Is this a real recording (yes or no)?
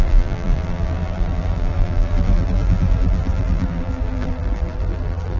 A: no